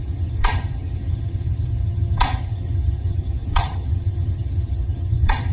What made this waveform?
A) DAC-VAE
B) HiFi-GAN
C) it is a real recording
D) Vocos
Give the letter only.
B